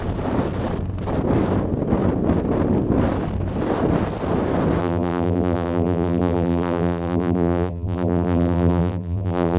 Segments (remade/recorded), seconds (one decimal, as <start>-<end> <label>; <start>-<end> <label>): 0.0-4.8 recorded; 4.8-9.6 remade